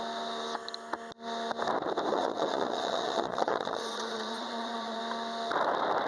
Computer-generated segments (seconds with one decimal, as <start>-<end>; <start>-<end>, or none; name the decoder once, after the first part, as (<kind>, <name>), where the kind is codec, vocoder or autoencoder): 2.1-5.0 (vocoder, Vocos)